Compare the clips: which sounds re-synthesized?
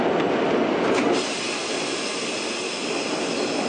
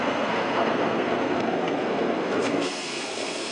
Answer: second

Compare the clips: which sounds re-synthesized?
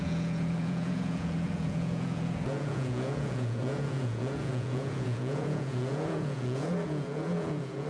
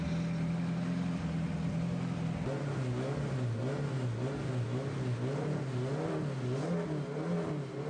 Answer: first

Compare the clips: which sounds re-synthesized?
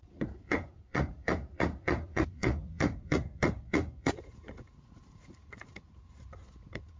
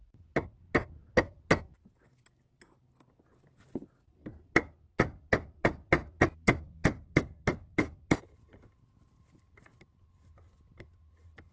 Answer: first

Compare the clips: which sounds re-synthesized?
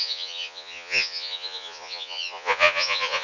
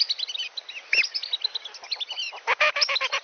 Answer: first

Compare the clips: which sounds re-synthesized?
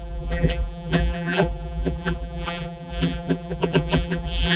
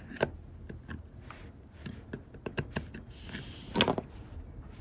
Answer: first